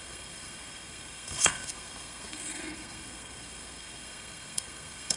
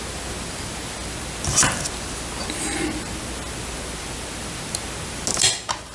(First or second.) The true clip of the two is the second